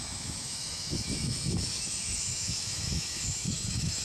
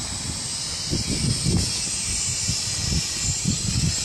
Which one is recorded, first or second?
second